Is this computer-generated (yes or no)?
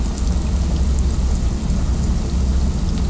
no